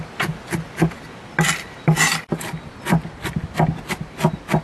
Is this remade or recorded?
recorded